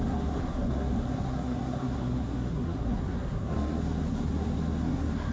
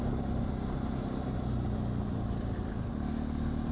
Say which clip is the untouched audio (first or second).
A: second